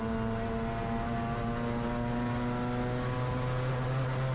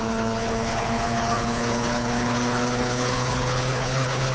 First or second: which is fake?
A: second